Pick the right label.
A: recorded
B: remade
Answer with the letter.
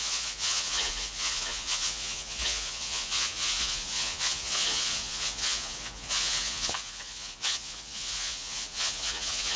B